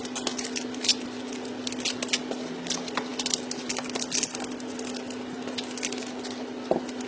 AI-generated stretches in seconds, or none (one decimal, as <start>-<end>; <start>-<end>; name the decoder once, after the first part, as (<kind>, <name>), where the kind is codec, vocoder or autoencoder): none

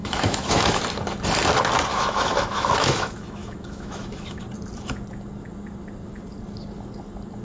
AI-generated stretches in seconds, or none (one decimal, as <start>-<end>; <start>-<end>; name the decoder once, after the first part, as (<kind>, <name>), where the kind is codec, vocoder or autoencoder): 0.0-0.8 (autoencoder, DAC-VAE); 1.9-4.4

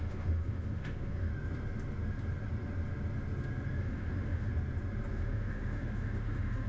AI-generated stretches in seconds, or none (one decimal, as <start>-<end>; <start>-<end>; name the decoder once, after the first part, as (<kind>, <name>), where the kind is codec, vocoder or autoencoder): 0.0-1.3 (autoencoder, DAC-VAE); 3.8-4.5; 5.1-6.7

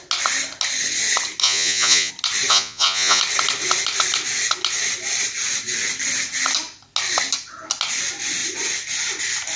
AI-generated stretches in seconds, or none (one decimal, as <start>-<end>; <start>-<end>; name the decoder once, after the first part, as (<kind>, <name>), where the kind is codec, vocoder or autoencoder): 1.4-2.1 (vocoder, Vocos); 2.5-3.2

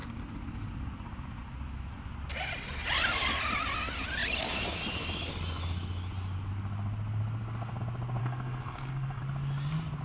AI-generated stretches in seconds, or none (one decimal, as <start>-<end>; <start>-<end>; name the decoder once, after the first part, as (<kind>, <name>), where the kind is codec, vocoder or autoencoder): 8.2-9.2 (codec, SNAC)

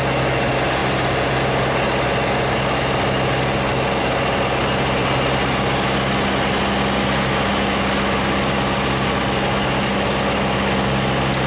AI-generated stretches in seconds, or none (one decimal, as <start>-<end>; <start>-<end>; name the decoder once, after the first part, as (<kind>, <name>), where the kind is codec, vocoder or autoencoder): none

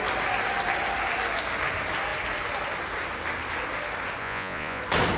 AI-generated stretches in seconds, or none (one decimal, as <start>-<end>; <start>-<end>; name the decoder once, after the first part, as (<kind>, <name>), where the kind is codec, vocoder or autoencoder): 4.2-4.8 (vocoder, Vocos)

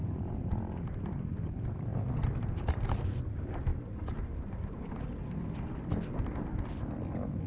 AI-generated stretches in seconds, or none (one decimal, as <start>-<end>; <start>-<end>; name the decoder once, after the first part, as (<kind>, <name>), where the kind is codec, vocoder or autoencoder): 0.0-1.1 (vocoder, BigVGAN v2); 3.7-4.9